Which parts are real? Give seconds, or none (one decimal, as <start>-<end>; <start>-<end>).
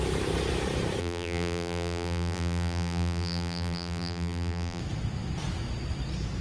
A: 0.0-1.0; 4.8-6.4